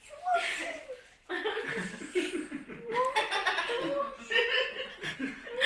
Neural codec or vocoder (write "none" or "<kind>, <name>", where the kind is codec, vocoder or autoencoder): none